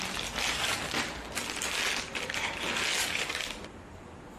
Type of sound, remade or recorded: recorded